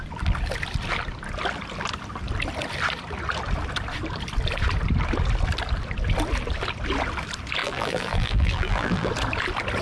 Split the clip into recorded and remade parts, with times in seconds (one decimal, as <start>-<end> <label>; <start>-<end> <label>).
0.0-7.6 recorded; 7.6-9.1 remade; 9.1-9.8 recorded